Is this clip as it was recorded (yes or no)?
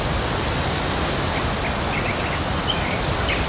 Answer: yes